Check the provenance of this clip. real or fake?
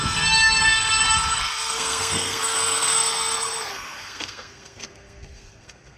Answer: fake